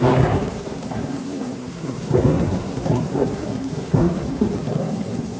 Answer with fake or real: fake